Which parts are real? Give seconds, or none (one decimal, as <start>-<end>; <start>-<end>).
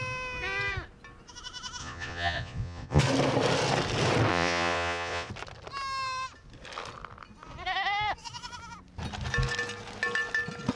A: 0.0-1.8; 3.0-4.3; 5.3-10.8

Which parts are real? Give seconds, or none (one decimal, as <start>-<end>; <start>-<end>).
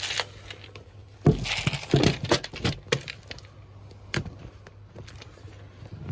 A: 0.0-6.1